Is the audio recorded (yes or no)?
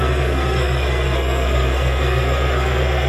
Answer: no